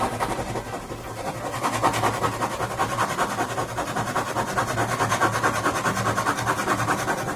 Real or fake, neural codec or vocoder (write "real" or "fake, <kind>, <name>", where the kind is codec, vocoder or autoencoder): real